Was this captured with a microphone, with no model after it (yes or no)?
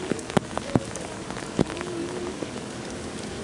no